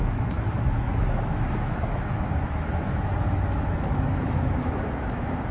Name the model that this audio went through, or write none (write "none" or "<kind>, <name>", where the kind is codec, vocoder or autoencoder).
autoencoder, DAC-VAE